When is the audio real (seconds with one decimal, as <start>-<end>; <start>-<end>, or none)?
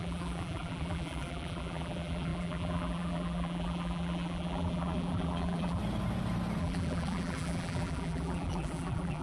5.8-6.6